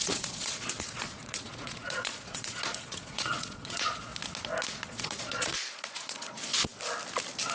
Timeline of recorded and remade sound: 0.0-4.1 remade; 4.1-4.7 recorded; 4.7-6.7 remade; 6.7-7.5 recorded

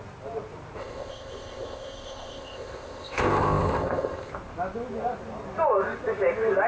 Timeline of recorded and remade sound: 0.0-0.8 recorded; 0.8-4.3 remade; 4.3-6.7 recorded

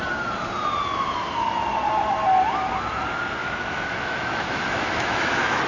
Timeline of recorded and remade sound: 0.0-3.4 recorded; 3.4-5.7 remade

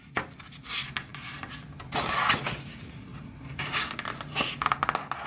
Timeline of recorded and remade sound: 0.0-5.3 recorded

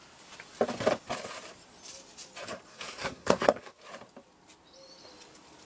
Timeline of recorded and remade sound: 0.0-2.7 recorded; 2.7-3.8 remade; 3.8-5.6 recorded

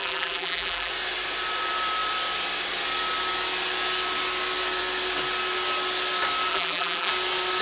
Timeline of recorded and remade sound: 0.0-0.9 remade; 0.9-6.5 recorded; 6.5-7.1 remade; 7.1-7.6 recorded